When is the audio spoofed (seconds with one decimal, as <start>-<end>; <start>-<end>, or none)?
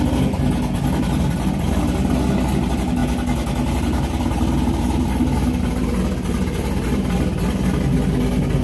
none